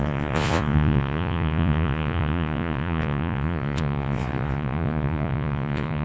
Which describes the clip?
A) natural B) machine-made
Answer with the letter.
B